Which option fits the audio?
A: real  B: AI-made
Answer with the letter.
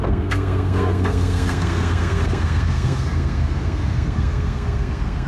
B